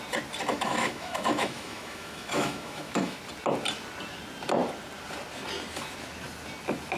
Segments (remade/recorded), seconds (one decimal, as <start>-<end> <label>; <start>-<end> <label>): 0.0-0.5 recorded; 0.5-3.2 remade; 3.2-7.0 recorded